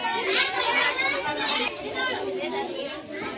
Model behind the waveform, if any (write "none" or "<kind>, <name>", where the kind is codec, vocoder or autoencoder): none